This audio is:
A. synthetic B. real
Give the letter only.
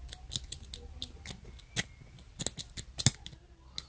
B